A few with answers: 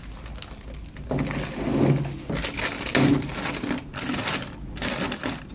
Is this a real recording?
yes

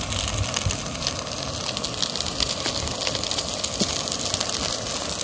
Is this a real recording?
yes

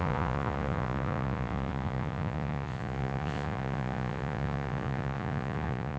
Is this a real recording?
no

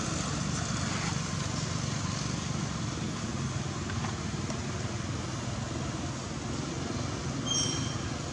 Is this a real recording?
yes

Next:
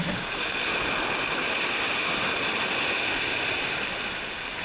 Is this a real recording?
yes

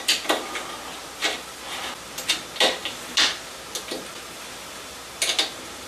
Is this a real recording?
yes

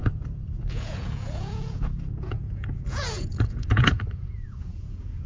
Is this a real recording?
no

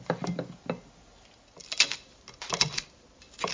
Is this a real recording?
yes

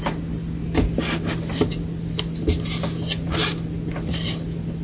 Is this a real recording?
yes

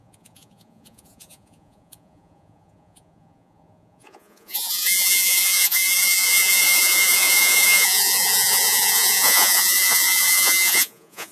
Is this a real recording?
no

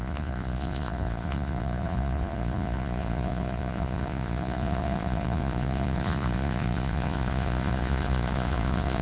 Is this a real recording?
no